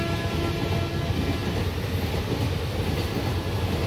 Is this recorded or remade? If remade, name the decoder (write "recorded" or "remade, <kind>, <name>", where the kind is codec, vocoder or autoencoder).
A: recorded